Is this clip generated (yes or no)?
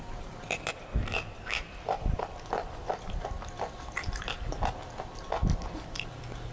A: no